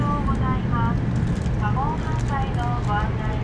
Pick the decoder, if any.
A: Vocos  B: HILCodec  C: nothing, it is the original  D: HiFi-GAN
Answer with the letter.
C